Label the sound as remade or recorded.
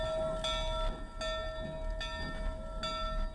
recorded